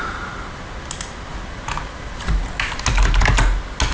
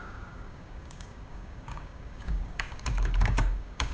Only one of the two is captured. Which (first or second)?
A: first